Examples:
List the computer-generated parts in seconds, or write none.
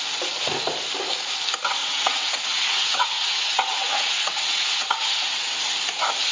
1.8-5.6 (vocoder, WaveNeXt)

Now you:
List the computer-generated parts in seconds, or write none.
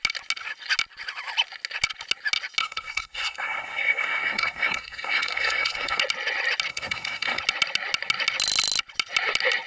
2.6-6.0 (codec, SNAC); 6.7-7.4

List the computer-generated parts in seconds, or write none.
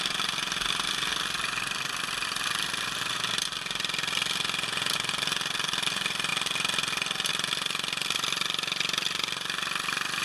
none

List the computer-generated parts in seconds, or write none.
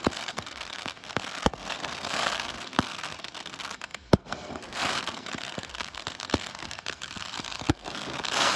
0.0-8.6 (codec, SNAC)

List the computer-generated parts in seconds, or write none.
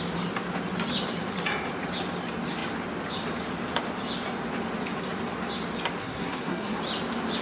6.0-6.8 (codec, SNAC)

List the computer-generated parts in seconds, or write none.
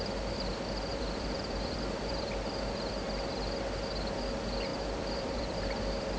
0.9-2.9 (vocoder, BigVGAN v2); 4.7-5.6